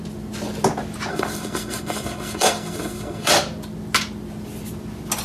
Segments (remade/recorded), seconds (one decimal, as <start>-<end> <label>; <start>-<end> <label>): 0.0-1.1 recorded; 1.1-3.3 remade; 3.3-5.2 recorded